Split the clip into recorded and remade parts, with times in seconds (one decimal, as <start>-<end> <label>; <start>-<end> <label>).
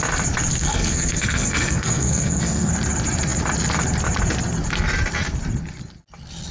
0.0-0.5 recorded; 0.5-2.7 remade; 2.7-6.5 recorded